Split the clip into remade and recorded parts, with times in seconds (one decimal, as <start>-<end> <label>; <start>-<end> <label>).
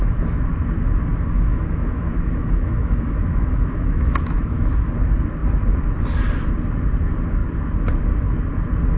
0.0-1.1 recorded; 1.1-4.9 remade; 4.9-9.0 recorded